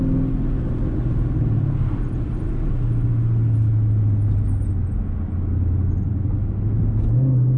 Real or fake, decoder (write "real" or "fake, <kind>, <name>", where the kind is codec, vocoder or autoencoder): real